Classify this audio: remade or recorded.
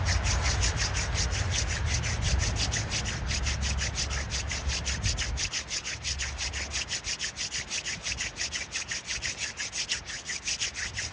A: recorded